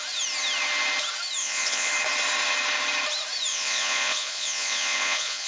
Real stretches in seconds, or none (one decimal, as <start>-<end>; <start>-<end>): 0.0-1.4; 1.9-3.5